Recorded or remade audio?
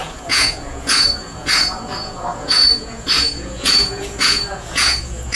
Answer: remade